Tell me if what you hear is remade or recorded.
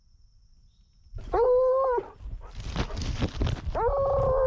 recorded